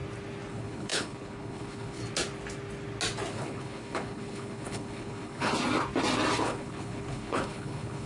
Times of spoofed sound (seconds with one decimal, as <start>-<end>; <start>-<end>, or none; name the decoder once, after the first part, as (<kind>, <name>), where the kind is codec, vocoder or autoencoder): 0.5-2.0 (codec, HILCodec); 3.3-5.5; 6.4-8.1